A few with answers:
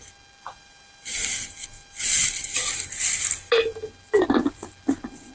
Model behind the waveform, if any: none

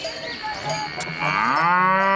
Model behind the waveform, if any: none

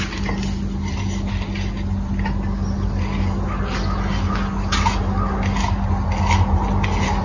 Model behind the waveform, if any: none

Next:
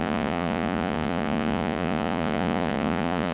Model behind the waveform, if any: vocoder, Vocos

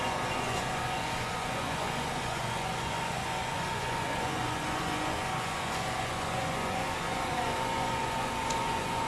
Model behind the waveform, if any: vocoder, Vocos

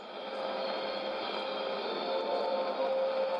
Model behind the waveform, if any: none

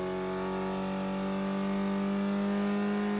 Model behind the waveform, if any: none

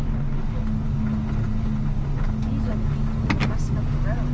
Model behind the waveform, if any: none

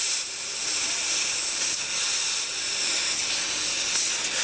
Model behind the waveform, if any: none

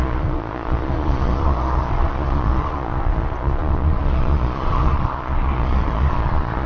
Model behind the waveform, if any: vocoder, Vocos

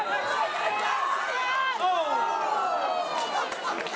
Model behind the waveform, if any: none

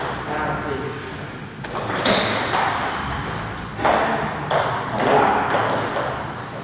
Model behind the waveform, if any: none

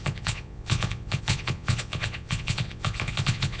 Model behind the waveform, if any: vocoder, Vocos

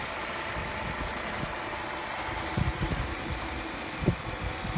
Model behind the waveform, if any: none